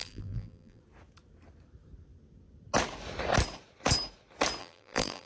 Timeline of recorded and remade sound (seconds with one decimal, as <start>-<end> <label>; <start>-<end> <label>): 0.0-0.8 remade; 0.8-4.6 recorded; 4.6-5.3 remade